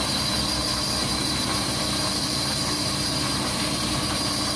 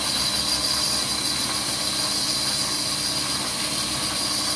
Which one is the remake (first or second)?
first